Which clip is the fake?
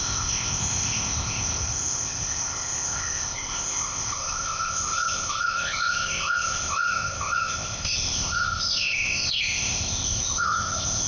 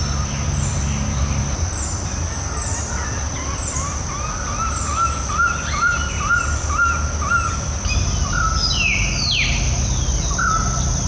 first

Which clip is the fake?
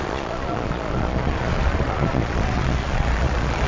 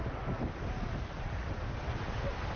first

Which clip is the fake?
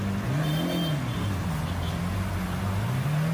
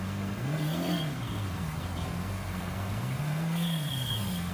second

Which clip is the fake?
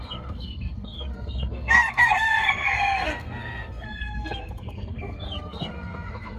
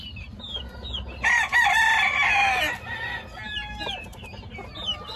first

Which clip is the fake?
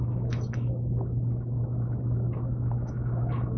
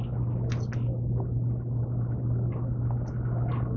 first